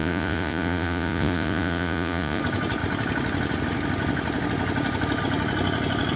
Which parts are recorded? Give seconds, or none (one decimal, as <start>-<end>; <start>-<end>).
2.4-6.2